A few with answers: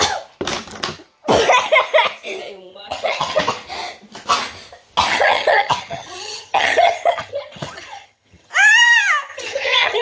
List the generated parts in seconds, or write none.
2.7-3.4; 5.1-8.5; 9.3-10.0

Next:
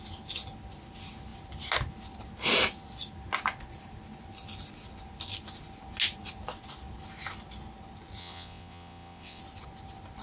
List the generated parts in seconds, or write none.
8.2-9.4

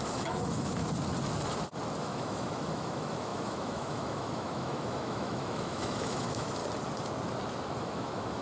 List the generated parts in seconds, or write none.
0.0-0.8; 2.0-6.6; 7.8-8.4

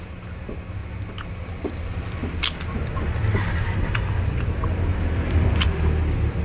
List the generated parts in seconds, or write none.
0.0-0.8; 1.3-6.4